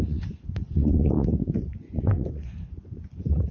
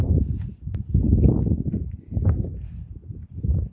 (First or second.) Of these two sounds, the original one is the second